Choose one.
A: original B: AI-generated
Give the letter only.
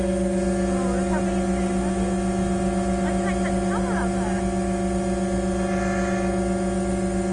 A